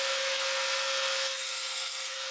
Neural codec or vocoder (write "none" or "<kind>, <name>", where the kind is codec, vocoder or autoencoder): codec, SNAC